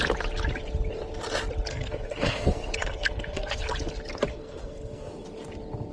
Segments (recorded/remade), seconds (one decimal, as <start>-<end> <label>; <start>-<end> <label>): 0.0-1.7 recorded; 1.7-3.6 remade; 3.6-4.3 recorded; 4.3-5.1 remade; 5.1-5.9 recorded